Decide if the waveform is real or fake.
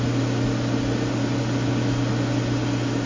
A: real